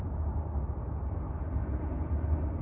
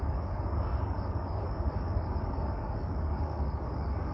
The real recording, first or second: first